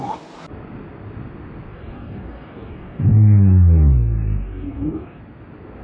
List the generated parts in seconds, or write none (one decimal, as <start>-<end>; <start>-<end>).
1.7-5.2